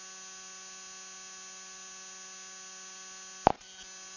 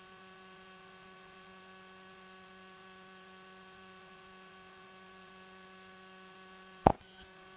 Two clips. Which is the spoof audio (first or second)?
second